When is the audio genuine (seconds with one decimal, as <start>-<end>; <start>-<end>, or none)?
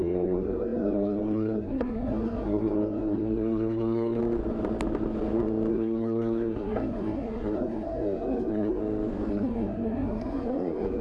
4.2-5.7; 8.8-9.3